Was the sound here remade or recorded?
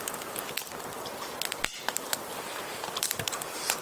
recorded